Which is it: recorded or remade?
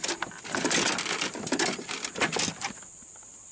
recorded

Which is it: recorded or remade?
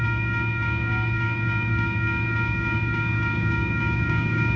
remade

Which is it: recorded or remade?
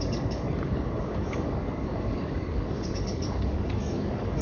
remade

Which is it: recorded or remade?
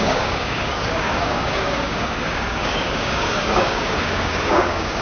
remade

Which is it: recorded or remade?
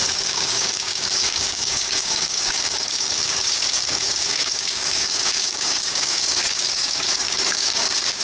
remade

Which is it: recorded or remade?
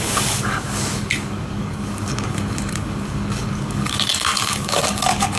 remade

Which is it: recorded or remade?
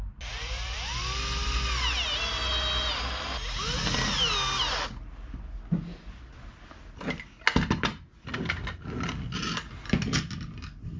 recorded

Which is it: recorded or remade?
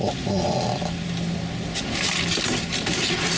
recorded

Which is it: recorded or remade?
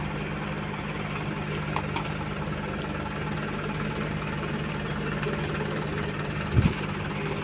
recorded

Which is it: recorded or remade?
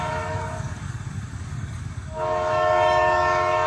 remade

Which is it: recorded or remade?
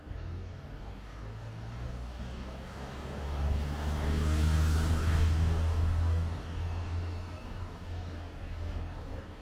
remade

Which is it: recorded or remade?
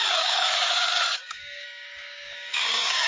remade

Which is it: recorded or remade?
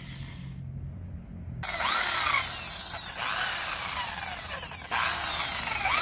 recorded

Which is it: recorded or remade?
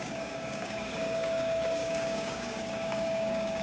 remade